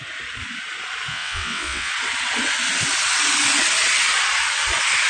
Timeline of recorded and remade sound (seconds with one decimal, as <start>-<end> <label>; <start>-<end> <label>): 0.0-1.1 recorded; 1.1-1.9 remade; 1.9-5.1 recorded